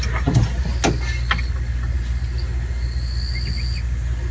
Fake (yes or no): no